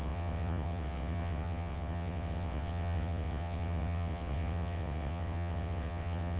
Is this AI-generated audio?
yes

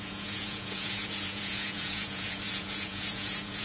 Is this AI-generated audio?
yes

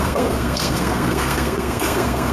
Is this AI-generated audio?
yes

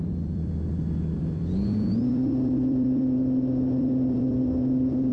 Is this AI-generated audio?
yes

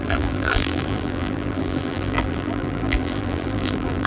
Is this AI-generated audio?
yes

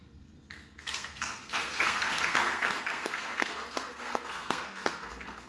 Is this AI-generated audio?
yes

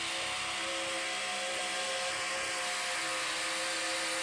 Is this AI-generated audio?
no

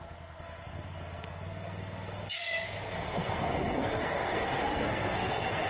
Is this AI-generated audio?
yes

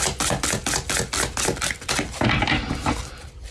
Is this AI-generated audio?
yes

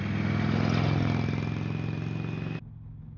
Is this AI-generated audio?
no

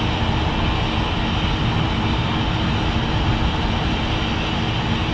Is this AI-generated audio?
no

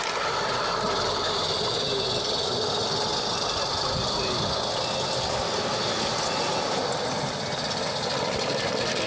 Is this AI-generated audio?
no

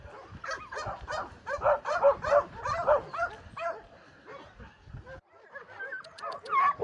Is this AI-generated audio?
no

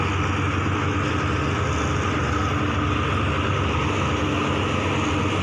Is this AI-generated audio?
no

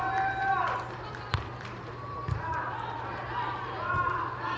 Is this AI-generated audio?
yes